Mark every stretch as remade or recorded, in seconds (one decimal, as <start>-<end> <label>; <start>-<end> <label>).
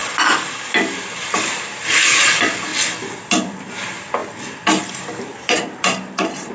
0.0-2.7 remade; 2.7-3.2 recorded; 3.2-4.2 remade; 4.2-4.9 recorded; 4.9-6.5 remade